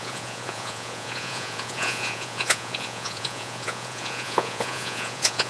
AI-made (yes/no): yes